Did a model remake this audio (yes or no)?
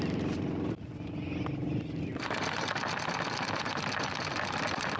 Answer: no